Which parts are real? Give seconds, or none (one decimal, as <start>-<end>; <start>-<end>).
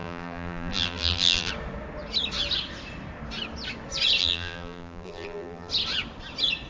1.5-4.2; 5.7-6.7